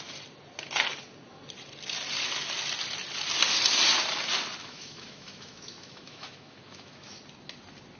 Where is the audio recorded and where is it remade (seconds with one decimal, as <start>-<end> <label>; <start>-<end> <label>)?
0.0-4.6 recorded; 4.6-7.2 remade; 7.2-8.0 recorded